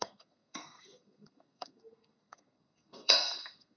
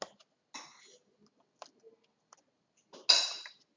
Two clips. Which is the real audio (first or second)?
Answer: second